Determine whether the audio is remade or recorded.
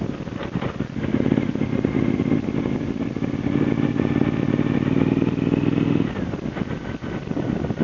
recorded